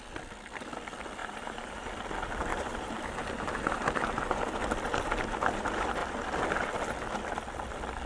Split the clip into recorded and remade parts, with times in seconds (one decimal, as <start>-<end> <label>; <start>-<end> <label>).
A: 0.0-1.2 recorded; 1.2-1.9 remade; 1.9-2.5 recorded; 2.5-4.2 remade; 4.2-8.1 recorded